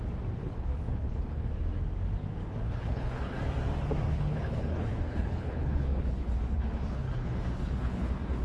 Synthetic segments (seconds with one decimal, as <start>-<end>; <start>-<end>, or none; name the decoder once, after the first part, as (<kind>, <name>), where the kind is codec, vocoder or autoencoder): 0.4-1.5 (codec, HILCodec); 2.4-3.4; 4.1-8.4